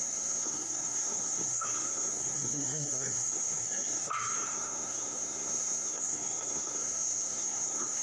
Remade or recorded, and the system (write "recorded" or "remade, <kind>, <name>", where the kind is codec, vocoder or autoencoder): remade, codec, SNAC